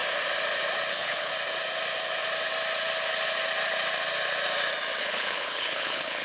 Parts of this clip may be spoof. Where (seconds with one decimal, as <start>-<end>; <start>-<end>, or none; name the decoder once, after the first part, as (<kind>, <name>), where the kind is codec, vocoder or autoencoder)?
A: 0.9-1.3 (codec, HILCodec); 5.0-6.2